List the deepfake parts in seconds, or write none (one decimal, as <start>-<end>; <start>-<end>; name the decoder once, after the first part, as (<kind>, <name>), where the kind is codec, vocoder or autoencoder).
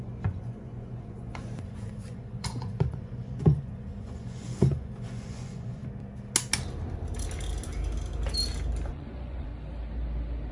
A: 0.0-5.8 (vocoder, Vocos); 8.9-9.5